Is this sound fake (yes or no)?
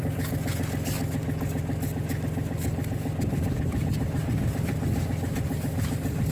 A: no